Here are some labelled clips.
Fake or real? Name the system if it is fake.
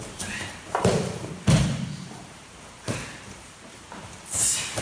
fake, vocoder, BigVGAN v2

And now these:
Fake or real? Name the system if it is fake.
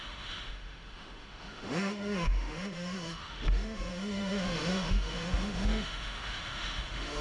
fake, autoencoder, DAC-VAE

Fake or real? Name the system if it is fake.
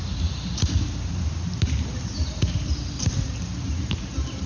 fake, vocoder, BigVGAN v2